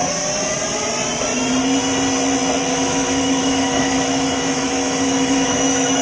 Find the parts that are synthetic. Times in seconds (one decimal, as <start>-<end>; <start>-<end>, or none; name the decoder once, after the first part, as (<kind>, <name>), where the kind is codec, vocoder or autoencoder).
2.7-6.0 (autoencoder, DAC-VAE)